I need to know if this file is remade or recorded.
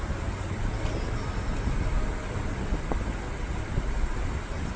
recorded